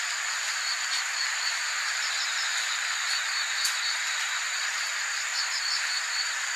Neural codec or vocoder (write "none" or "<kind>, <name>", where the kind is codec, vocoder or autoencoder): none